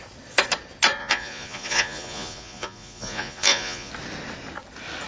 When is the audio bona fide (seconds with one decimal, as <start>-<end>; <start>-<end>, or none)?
0.0-1.0; 3.9-5.1